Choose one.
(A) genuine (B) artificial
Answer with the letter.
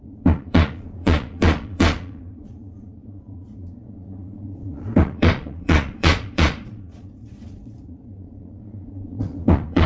B